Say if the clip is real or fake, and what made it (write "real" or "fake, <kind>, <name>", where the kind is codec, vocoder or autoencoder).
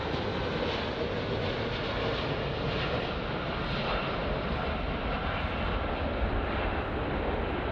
real